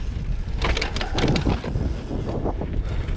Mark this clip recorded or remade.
recorded